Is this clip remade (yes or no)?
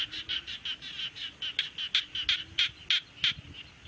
no